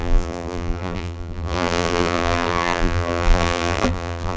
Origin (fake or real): fake